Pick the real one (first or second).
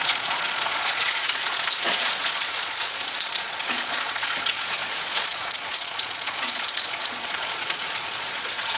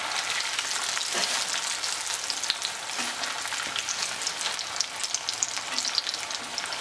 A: second